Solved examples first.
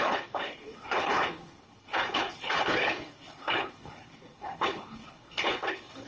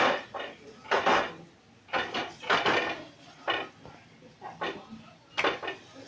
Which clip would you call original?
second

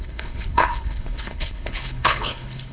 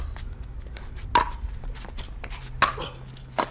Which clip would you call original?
second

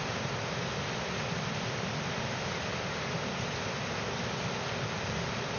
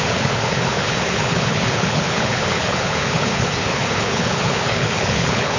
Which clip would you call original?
first